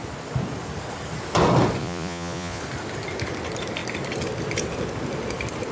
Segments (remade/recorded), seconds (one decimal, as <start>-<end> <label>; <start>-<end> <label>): 0.0-1.8 recorded; 1.8-2.6 remade; 2.6-5.7 recorded